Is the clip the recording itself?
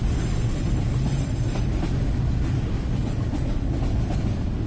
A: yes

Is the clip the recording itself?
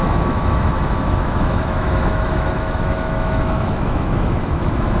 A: no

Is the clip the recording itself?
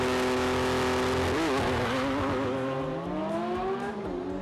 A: yes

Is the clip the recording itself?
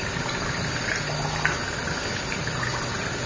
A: yes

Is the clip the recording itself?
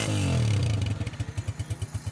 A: yes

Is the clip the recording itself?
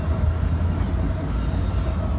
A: yes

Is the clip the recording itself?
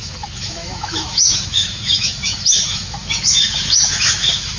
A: no